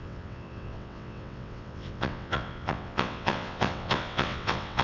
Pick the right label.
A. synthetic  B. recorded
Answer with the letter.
A